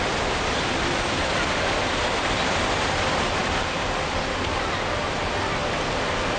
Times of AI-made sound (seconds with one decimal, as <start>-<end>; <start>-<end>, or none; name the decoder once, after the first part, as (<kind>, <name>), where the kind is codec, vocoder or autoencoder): none